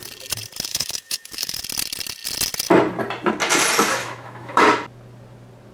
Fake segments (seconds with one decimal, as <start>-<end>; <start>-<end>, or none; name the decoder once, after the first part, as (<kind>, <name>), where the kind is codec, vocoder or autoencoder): 0.7-1.6 (autoencoder, DAC-VAE); 4.0-4.6